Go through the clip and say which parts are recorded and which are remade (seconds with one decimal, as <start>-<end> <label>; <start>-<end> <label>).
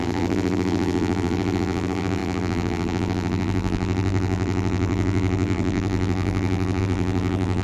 0.0-7.6 remade